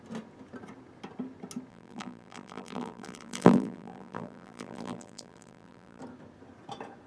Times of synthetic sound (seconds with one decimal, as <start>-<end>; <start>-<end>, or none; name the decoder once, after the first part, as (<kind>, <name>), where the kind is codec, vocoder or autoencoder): 1.7-6.0 (vocoder, BigVGAN v2)